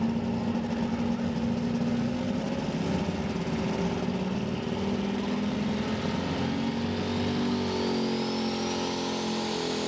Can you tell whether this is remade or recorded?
recorded